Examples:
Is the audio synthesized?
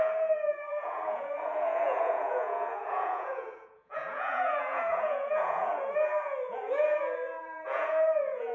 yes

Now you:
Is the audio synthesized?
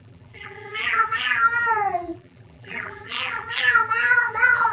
yes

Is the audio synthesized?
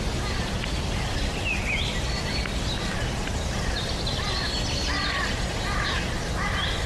no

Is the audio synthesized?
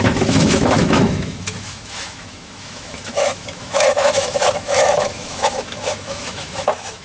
yes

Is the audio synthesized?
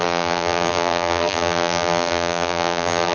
yes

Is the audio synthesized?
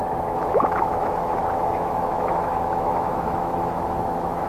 yes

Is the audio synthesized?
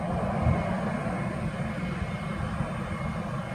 no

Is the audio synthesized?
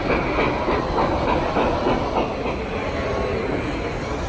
no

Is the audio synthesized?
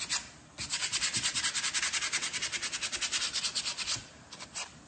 no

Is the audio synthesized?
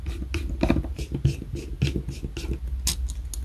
no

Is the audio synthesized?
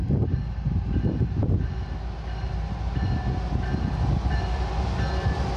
no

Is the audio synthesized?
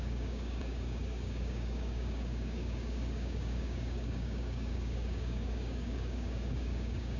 yes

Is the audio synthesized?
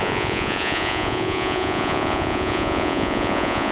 yes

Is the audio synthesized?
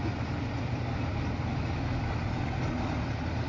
no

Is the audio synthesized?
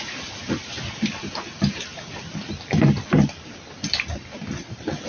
no